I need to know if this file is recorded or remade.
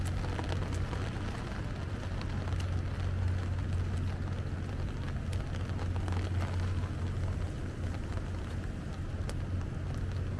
recorded